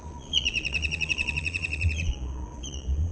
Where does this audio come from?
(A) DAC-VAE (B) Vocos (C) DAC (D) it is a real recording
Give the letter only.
B